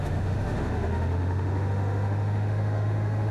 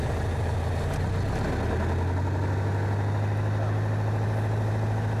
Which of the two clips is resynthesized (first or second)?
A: first